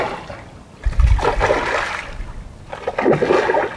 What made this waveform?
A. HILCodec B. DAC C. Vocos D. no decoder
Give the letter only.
D